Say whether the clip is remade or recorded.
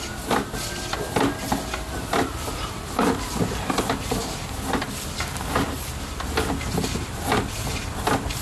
recorded